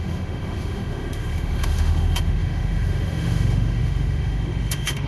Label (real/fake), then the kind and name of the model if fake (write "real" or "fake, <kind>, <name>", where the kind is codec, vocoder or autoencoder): fake, autoencoder, DAC-VAE